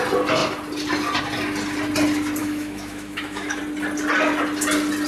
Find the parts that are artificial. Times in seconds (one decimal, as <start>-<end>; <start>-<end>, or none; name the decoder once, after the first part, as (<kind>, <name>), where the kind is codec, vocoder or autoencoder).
2.4-3.6 (autoencoder, DAC-VAE)